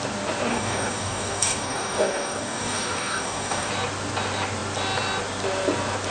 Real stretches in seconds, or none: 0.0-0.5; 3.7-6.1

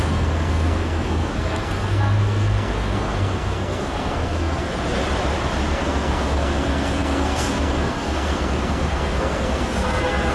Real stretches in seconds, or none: 4.7-5.7

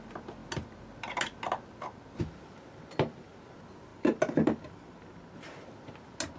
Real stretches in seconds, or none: 0.0-3.9; 5.3-6.4

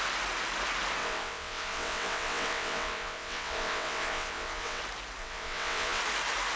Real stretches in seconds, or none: 0.0-1.0; 4.8-5.2; 6.0-6.6